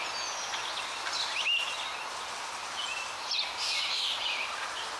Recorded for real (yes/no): yes